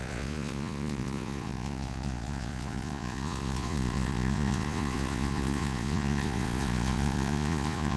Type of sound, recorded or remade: remade